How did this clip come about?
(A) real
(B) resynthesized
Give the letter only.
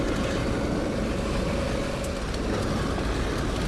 A